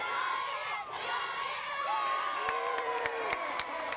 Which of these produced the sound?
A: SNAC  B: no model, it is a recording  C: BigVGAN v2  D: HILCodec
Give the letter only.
C